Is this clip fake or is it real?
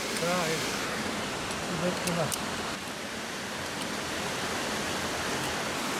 real